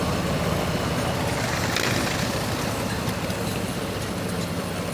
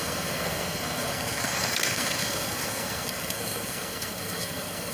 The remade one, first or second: second